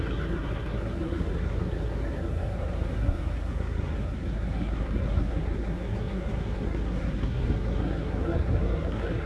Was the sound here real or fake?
fake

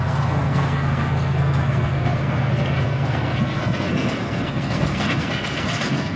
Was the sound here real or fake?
fake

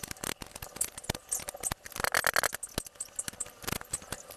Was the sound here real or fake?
real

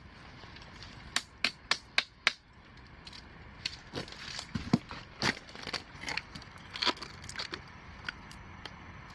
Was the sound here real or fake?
real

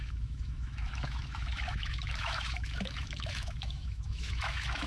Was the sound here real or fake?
fake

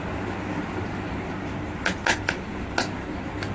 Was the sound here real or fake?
real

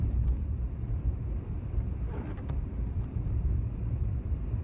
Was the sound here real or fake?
fake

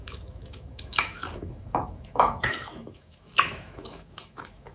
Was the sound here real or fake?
fake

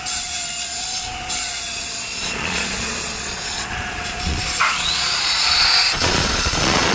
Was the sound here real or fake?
fake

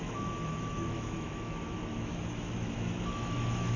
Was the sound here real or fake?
fake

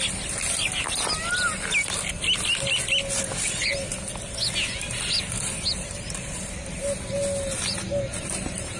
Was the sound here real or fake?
real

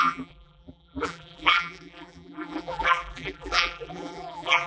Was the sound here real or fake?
fake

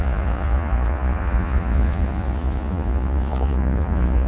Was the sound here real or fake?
fake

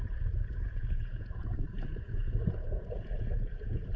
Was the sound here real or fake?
fake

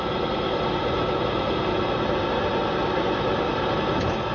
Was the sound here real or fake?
real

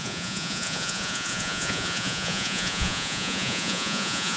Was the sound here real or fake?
fake